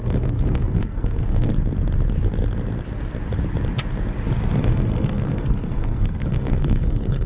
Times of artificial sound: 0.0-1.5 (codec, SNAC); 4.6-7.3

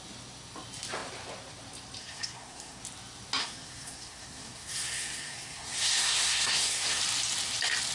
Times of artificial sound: 2.0-2.8 (codec, SNAC); 3.4-7.0

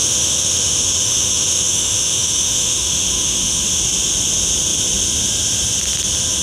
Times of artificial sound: 0.0-3.8 (autoencoder, DAC-VAE)

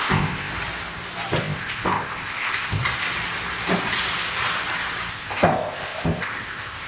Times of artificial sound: 0.0-0.5 (codec, ZipCodec); 1.4-2.8; 5.1-6.9

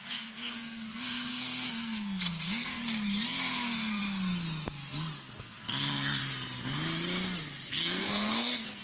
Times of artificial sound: 0.0-2.8 (codec, SNAC); 3.3-4.0; 5.4-6.2; 7.7-8.8

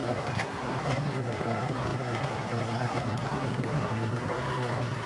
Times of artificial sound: 0.0-5.1 (codec, SNAC)

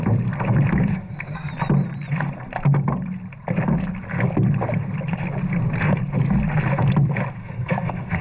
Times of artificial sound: 0.9-1.5 (codec, SNAC); 7.4-8.2